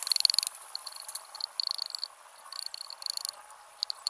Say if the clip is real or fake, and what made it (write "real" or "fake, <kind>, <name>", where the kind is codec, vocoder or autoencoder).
real